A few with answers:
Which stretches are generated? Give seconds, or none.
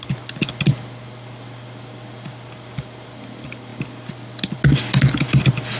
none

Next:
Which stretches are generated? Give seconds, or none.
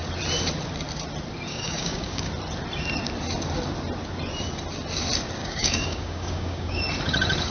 1.5-2.3 (codec, DAC); 5.4-6.8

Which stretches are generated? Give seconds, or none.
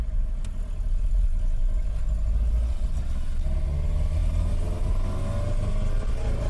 none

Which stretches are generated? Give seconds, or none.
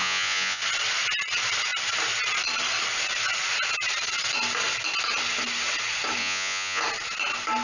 0.0-0.6 (vocoder, Vocos); 6.2-6.8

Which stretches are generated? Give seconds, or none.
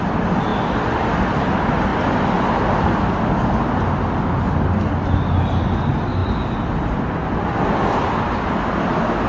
none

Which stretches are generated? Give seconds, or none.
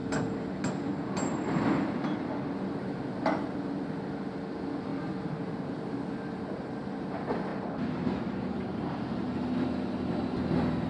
none